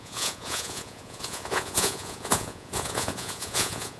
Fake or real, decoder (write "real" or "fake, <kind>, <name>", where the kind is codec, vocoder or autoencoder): fake, vocoder, Vocos